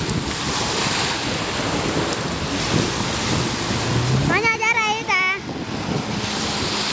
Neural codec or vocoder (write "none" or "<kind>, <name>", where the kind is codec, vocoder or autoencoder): none